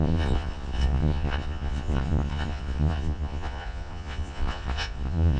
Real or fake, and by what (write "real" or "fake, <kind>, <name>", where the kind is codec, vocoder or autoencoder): fake, vocoder, Vocos